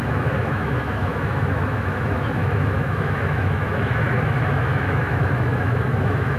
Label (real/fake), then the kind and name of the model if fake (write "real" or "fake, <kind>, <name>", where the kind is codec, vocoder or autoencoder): fake, autoencoder, DAC-VAE